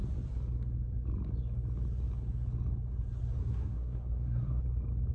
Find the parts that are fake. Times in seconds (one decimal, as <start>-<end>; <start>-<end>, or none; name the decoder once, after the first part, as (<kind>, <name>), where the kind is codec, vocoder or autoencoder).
3.4-4.6 (codec, SNAC)